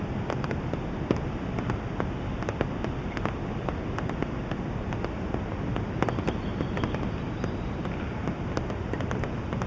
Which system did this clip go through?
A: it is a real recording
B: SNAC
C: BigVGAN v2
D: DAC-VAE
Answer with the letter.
A